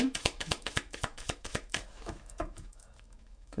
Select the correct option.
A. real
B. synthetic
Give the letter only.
B